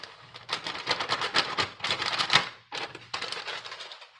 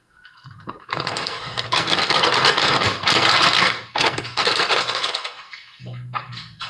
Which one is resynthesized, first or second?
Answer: second